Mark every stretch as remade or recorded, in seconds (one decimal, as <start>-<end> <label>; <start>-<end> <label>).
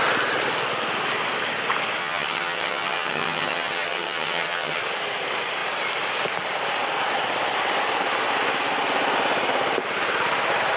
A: 0.0-2.0 recorded; 2.0-4.8 remade; 4.8-10.8 recorded